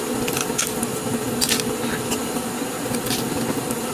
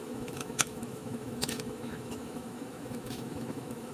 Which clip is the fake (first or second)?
second